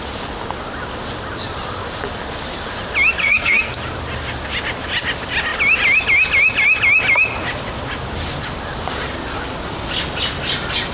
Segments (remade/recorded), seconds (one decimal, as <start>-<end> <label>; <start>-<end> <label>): 0.0-3.2 recorded; 3.2-3.7 remade; 3.7-10.9 recorded

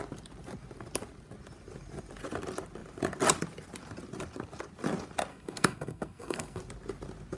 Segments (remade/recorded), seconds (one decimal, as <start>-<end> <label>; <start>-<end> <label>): 0.0-5.3 recorded; 5.3-6.6 remade; 6.6-7.4 recorded

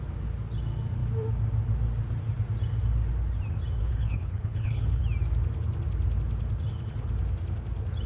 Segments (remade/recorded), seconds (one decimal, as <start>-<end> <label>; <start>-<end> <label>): 0.0-3.8 recorded; 3.8-5.0 remade; 5.0-8.1 recorded

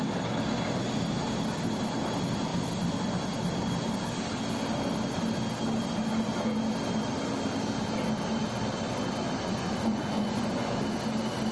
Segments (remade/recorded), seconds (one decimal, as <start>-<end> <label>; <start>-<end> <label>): 0.0-9.6 recorded; 9.6-10.8 remade; 10.8-11.5 recorded

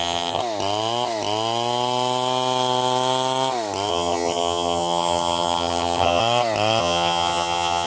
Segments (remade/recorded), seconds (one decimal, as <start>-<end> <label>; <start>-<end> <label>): 0.0-0.4 remade; 0.4-3.9 recorded; 3.9-6.2 remade; 6.2-6.8 recorded; 6.8-7.9 remade

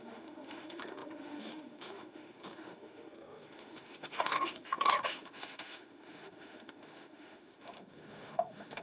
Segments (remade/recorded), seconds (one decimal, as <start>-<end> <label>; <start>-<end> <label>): 0.0-8.8 remade

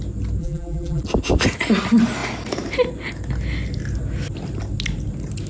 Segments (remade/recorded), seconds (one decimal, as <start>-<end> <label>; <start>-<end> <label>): 0.0-0.4 recorded; 0.4-1.0 remade; 1.0-5.5 recorded

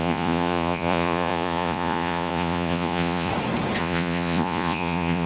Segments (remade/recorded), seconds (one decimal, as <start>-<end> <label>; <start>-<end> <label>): 0.0-3.3 remade; 3.3-3.8 recorded; 3.8-5.3 remade